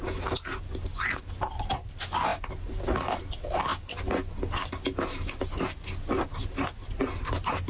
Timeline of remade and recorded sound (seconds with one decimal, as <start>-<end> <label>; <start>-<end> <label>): 0.0-7.7 recorded